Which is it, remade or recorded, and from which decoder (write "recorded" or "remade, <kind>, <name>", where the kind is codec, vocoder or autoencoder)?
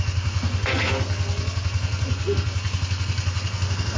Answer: remade, codec, SNAC